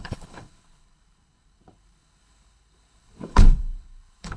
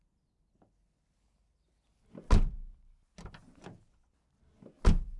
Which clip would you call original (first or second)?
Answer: second